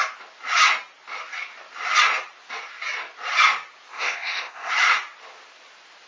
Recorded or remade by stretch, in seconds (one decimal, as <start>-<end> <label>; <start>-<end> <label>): 0.0-3.9 recorded; 3.9-4.7 remade; 4.7-6.1 recorded